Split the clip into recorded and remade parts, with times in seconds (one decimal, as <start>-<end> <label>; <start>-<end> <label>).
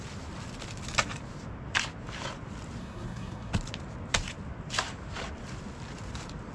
0.0-2.8 recorded; 2.8-3.5 remade; 3.5-6.5 recorded